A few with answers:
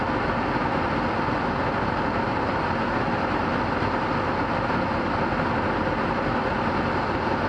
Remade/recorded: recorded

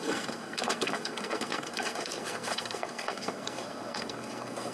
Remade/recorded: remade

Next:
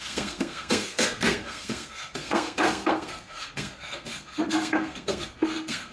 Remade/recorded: remade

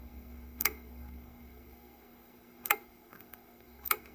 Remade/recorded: remade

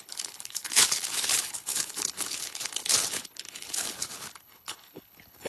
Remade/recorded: remade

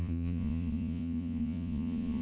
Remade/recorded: remade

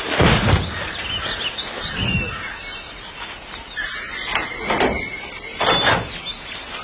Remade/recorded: recorded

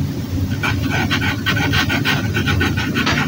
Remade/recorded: recorded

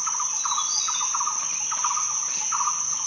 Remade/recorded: recorded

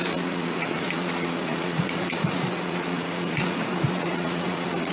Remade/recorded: remade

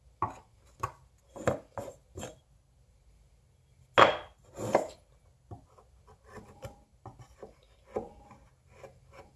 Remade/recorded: recorded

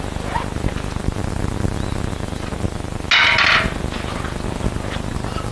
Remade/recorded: recorded